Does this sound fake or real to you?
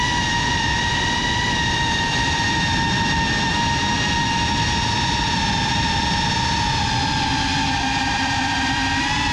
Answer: fake